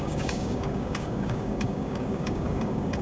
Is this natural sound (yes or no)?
no